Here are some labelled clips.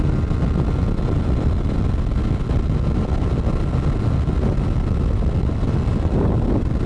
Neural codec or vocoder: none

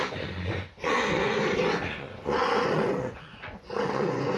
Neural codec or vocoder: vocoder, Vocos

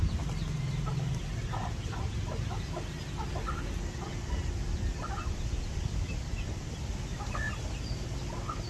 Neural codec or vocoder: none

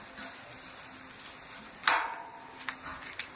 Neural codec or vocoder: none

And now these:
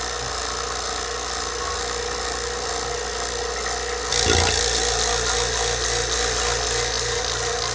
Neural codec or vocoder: none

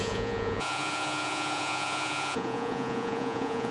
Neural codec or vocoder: vocoder, Vocos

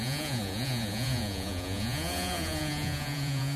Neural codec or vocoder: vocoder, Vocos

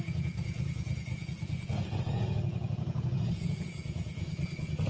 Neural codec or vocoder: vocoder, Vocos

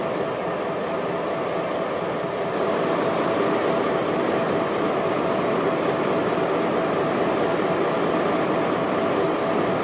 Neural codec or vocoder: none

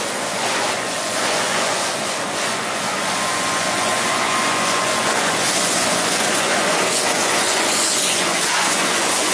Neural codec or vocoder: vocoder, Vocos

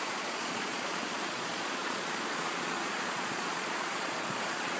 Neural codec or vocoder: vocoder, Vocos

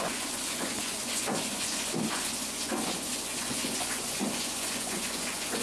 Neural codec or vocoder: vocoder, Vocos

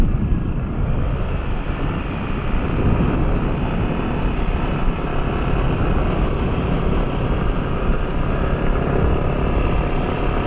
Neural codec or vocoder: none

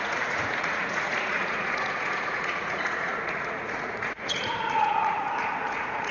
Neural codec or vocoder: vocoder, Vocos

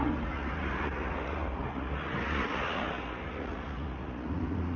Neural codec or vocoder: vocoder, Vocos